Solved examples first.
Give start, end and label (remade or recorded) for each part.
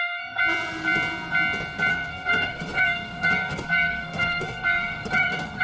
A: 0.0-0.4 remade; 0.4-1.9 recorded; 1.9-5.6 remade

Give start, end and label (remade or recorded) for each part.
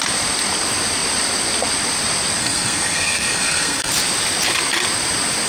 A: 0.0-2.4 recorded; 2.4-3.9 remade; 3.9-5.5 recorded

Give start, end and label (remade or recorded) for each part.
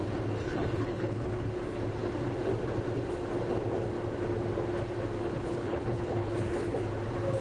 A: 0.0-0.4 recorded; 0.4-1.5 remade; 1.5-5.2 recorded; 5.2-6.8 remade; 6.8-7.4 recorded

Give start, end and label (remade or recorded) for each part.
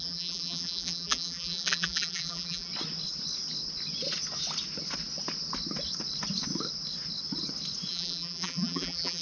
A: 0.0-2.7 remade; 2.7-7.9 recorded; 7.9-9.2 remade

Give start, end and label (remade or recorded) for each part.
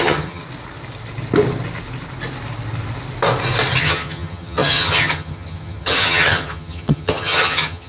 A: 0.0-0.4 remade; 0.4-3.8 recorded; 3.8-7.9 remade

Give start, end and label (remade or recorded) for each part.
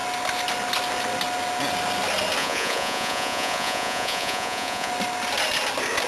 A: 0.0-2.4 recorded; 2.4-4.9 remade; 4.9-6.1 recorded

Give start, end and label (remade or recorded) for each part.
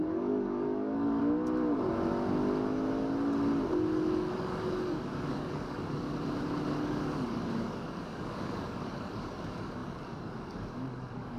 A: 0.0-1.2 remade; 1.2-4.3 recorded; 4.3-6.1 remade; 6.1-6.7 recorded; 6.7-11.4 remade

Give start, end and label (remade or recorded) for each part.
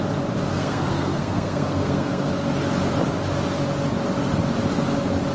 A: 0.0-0.5 recorded; 0.5-2.3 remade; 2.3-5.3 recorded